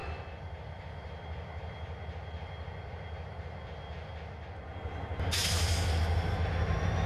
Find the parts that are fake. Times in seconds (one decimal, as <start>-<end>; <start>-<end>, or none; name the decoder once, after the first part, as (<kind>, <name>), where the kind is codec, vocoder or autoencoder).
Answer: 0.0-4.1 (vocoder, BigVGAN v2)